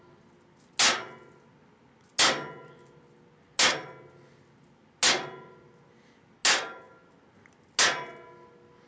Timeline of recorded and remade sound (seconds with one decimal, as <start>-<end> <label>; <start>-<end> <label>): 0.0-8.9 recorded